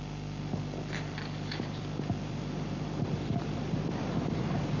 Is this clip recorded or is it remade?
remade